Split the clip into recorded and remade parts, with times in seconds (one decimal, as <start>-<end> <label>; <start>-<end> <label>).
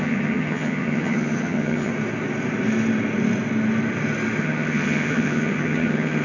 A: 0.0-1.9 remade; 1.9-4.4 recorded; 4.4-6.2 remade